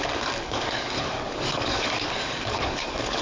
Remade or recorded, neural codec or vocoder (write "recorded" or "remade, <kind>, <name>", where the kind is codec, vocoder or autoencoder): remade, codec, DAC